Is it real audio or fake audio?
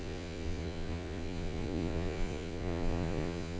fake